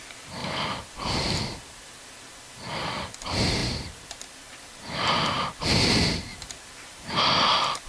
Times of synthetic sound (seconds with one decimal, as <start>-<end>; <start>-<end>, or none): 3.6-5.6; 6.3-7.1